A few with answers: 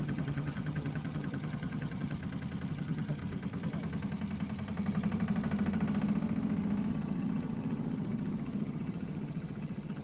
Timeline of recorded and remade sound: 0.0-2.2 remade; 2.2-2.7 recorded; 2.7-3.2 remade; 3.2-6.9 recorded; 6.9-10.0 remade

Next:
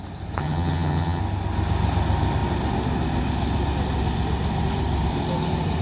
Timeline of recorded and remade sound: 0.0-0.4 recorded; 0.4-1.2 remade; 1.2-5.8 recorded

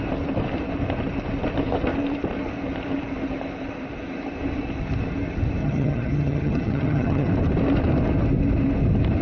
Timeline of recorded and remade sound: 0.0-5.6 recorded; 5.6-7.3 remade; 7.3-9.2 recorded

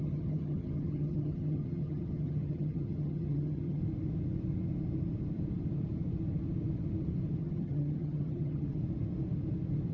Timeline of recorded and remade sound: 0.0-3.8 remade; 3.8-7.4 recorded; 7.4-8.8 remade; 8.8-9.9 recorded

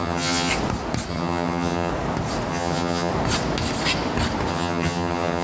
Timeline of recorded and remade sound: 0.0-0.5 remade; 0.5-1.1 recorded; 1.1-1.9 remade; 1.9-2.5 recorded; 2.5-3.1 remade; 3.1-4.5 recorded; 4.5-5.4 remade

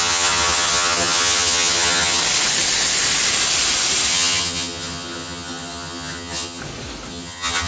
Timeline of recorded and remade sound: 0.0-2.2 remade; 2.2-4.1 recorded; 4.1-6.6 remade; 6.6-7.1 recorded; 7.1-7.7 remade